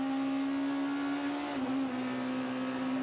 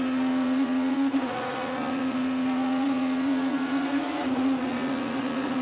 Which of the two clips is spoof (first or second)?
second